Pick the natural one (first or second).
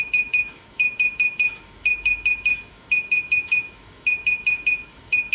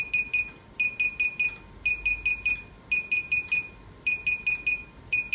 second